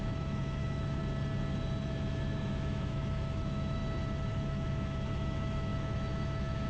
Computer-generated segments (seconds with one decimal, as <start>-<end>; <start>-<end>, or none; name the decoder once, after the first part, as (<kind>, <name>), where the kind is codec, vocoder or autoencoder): 0.0-1.0 (autoencoder, DAC-VAE); 1.9-3.8; 4.3-6.7